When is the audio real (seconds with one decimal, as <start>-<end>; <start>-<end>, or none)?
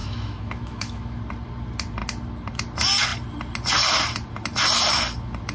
1.2-5.5